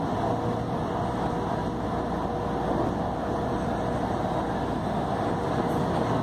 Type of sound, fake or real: real